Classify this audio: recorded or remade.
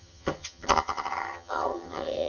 remade